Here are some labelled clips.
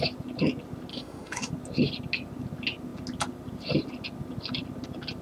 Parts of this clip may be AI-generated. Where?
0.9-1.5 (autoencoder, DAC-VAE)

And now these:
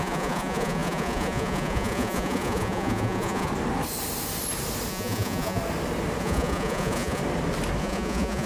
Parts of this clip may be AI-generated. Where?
0.0-3.5 (vocoder, Vocos); 4.9-5.6; 6.2-7.2; 7.8-8.5

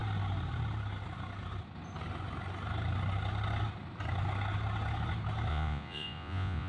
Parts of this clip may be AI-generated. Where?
5.5-6.7 (vocoder, Vocos)